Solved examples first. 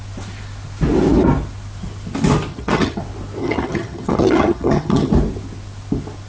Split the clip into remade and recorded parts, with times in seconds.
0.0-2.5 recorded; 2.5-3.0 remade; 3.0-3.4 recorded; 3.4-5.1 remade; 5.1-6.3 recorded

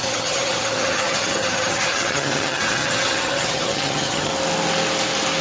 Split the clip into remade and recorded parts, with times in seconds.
0.0-4.3 remade; 4.3-5.4 recorded

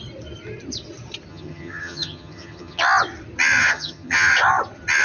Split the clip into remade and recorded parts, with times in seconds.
0.0-1.3 recorded; 1.3-2.8 remade; 2.8-3.6 recorded; 3.6-4.3 remade; 4.3-5.0 recorded